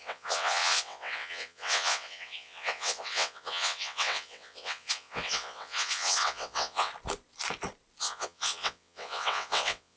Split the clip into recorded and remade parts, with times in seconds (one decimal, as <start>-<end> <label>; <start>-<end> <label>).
0.0-6.9 remade; 6.9-8.0 recorded; 8.0-10.0 remade